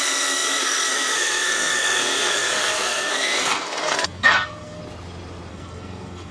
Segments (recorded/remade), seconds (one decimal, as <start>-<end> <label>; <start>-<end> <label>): 0.0-4.8 remade; 4.8-5.5 recorded; 5.5-6.3 remade